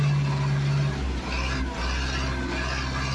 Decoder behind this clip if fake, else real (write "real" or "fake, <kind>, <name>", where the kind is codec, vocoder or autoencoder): real